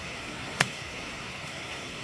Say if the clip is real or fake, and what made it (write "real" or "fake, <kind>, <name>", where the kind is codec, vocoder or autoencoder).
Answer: fake, codec, SNAC